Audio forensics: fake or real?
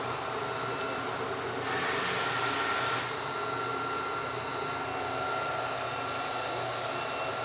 real